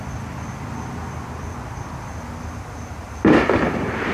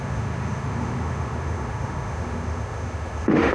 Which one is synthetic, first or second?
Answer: second